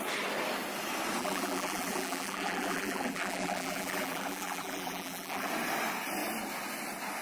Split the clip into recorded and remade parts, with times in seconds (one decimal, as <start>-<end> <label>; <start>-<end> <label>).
0.0-1.2 recorded; 1.2-5.5 remade; 5.5-7.2 recorded